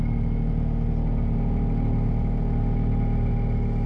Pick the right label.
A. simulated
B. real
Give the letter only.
B